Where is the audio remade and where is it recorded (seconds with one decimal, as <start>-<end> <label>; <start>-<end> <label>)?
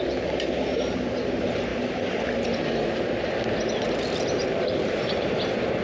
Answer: 0.0-1.7 recorded; 1.7-2.6 remade; 2.6-4.4 recorded; 4.4-5.8 remade